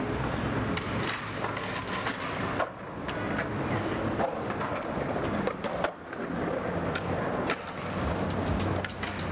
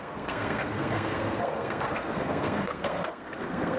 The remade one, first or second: second